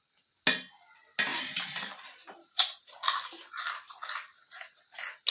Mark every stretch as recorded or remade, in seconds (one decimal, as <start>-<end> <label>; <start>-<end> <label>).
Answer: 0.0-1.3 recorded; 1.3-2.9 remade; 2.9-5.3 recorded